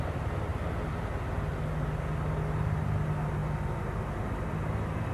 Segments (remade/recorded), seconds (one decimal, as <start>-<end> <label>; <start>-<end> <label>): 0.0-5.1 recorded